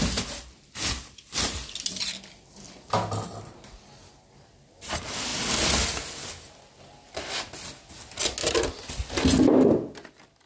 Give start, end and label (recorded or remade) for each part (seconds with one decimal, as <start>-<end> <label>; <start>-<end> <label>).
0.0-10.5 recorded